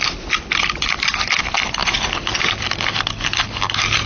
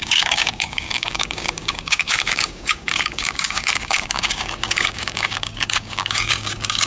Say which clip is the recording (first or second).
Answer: first